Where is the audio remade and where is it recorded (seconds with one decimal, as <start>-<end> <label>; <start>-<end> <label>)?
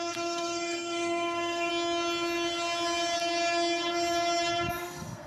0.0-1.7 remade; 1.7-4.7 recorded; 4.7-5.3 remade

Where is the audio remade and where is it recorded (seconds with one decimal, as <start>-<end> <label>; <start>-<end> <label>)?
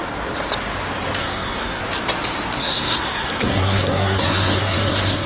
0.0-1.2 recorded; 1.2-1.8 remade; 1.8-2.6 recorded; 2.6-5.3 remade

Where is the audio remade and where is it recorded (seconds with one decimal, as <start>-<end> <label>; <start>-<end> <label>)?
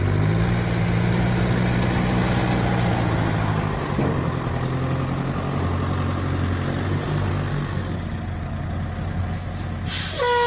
0.0-7.3 recorded; 7.3-7.8 remade; 7.8-10.5 recorded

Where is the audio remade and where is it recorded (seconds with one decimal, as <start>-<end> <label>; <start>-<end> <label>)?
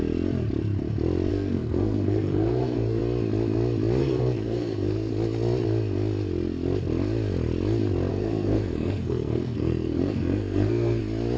0.0-1.3 recorded; 1.3-3.0 remade; 3.0-4.0 recorded; 4.0-5.1 remade; 5.1-8.1 recorded; 8.1-11.0 remade; 11.0-11.4 recorded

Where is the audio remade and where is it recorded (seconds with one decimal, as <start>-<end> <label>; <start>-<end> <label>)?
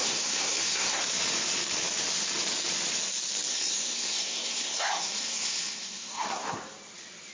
0.0-1.0 remade; 1.0-3.5 recorded; 3.5-6.6 remade; 6.6-7.3 recorded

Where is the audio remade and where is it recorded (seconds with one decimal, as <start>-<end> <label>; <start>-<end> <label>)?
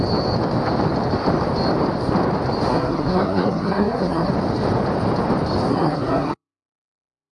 0.0-2.7 recorded; 2.7-4.3 remade; 4.3-5.7 recorded; 5.7-7.3 remade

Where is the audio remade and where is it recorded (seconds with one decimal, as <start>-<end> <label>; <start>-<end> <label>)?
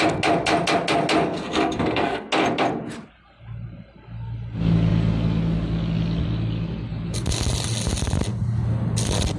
0.0-1.3 recorded; 1.3-2.3 remade; 2.3-9.4 recorded